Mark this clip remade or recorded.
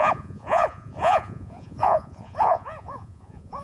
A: remade